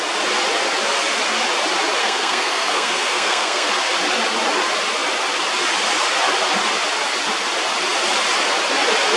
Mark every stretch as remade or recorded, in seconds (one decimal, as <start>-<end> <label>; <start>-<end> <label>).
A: 0.0-2.0 recorded; 2.0-3.7 remade; 3.7-9.2 recorded